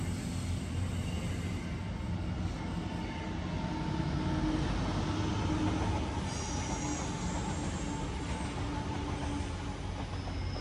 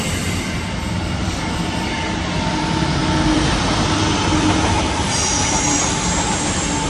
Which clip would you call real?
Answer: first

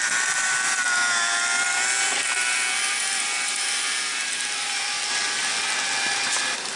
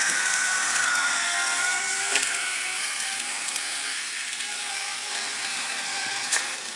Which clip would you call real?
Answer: first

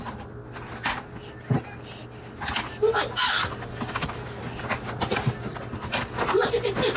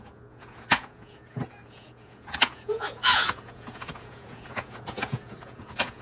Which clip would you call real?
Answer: first